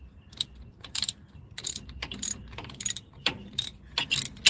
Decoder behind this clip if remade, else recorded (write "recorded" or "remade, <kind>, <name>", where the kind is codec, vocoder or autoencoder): remade, vocoder, BigVGAN v2